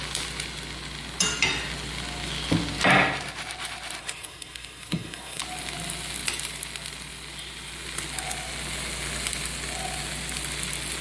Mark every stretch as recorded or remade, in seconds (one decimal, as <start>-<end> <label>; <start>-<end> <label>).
0.0-4.0 recorded; 4.0-5.4 remade; 5.4-11.0 recorded